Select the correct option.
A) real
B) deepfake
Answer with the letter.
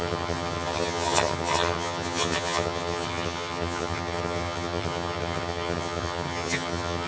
B